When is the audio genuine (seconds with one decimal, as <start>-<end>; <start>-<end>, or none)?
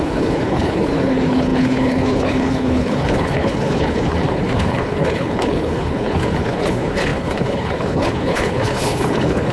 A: none